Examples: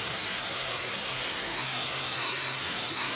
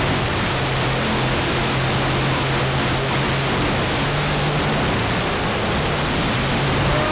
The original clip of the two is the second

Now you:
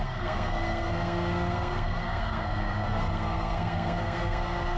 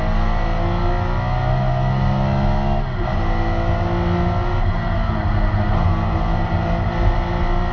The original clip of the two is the second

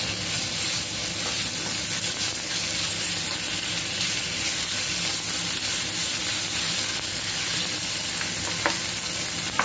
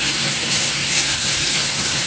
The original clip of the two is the first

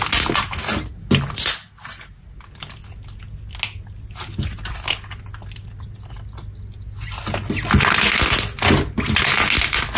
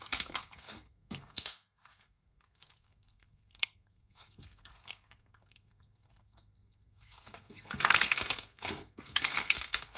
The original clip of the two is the first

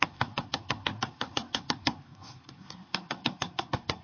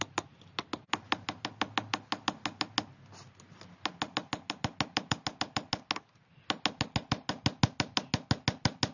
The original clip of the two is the second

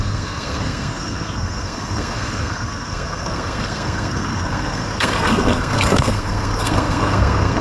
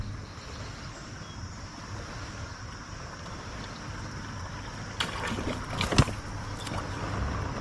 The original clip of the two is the second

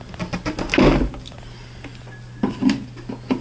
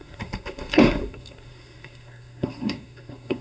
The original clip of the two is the first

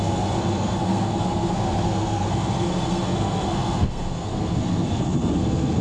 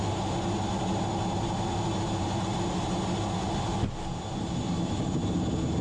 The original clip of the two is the second